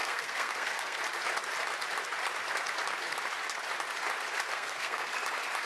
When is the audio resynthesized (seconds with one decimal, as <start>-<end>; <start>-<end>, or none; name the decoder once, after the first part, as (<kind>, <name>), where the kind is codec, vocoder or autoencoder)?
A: 0.0-1.0 (codec, SNAC); 4.5-5.1